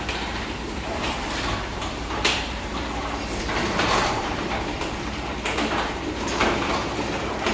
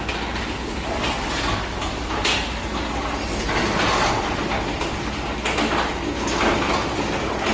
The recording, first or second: second